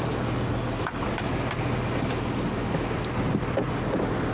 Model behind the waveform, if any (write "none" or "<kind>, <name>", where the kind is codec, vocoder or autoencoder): none